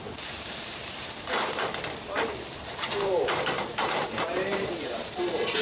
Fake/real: fake